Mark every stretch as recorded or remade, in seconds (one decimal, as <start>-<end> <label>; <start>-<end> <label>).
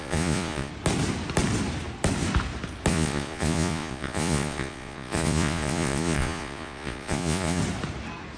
0.0-0.7 remade; 0.7-2.9 recorded; 2.9-7.6 remade; 7.6-8.4 recorded